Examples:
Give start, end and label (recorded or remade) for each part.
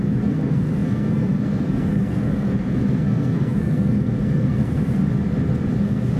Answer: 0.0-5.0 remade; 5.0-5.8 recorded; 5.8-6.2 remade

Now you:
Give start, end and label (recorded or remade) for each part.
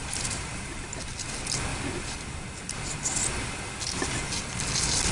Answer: 0.0-0.9 remade; 0.9-5.1 recorded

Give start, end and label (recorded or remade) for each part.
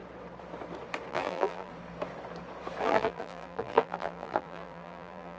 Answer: 0.0-1.1 recorded; 1.1-1.7 remade; 1.7-2.8 recorded; 2.8-5.4 remade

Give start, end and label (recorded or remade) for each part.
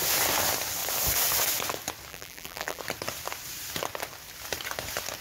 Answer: 0.0-2.1 recorded; 2.1-2.8 remade; 2.8-5.2 recorded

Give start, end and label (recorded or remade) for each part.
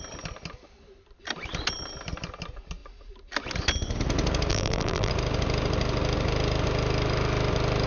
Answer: 0.0-4.5 recorded; 4.5-5.1 remade; 5.1-7.9 recorded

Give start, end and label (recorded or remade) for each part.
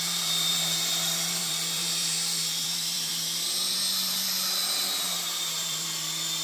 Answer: 0.0-3.1 remade; 3.1-3.9 recorded; 3.9-6.4 remade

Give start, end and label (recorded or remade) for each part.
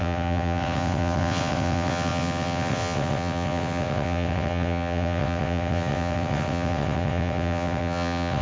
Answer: 0.0-8.4 remade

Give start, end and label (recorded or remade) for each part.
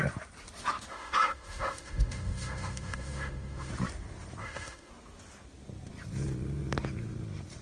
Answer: 0.0-0.9 recorded; 0.9-3.7 remade; 3.7-4.4 recorded; 4.4-4.9 remade; 4.9-7.6 recorded